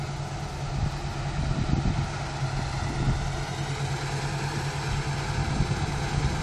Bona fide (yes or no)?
yes